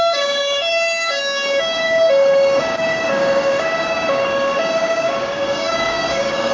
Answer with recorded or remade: remade